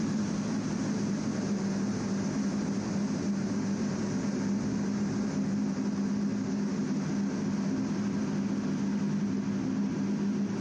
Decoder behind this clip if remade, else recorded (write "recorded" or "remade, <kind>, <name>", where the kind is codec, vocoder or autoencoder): recorded